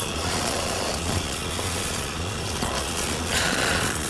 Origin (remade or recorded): remade